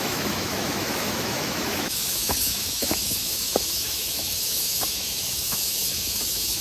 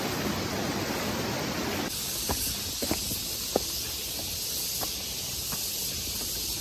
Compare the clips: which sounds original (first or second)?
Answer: second